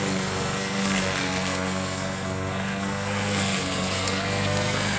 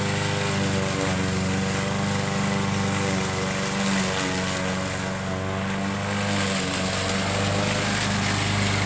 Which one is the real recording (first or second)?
second